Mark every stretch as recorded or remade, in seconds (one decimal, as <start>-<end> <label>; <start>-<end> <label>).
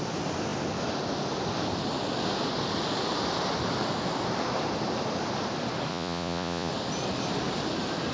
0.0-5.9 recorded; 5.9-6.7 remade; 6.7-8.1 recorded